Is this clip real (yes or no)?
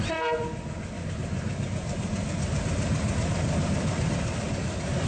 no